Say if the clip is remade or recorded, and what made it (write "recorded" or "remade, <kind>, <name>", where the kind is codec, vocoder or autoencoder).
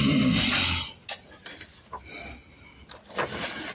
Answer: recorded